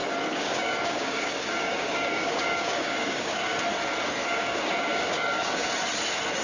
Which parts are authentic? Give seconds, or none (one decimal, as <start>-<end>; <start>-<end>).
3.6-4.2; 5.7-6.4